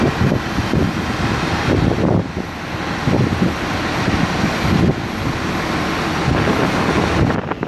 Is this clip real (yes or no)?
yes